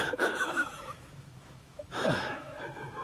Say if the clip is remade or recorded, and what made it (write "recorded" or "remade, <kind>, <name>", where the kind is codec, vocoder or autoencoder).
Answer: remade, autoencoder, DAC-VAE